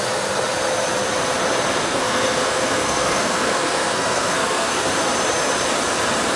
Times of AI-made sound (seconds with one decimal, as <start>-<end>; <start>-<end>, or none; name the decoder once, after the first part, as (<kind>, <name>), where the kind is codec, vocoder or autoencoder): 1.8-4.9 (codec, SNAC)